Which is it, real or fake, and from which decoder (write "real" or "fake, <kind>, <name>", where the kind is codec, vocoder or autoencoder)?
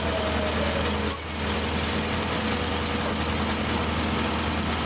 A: real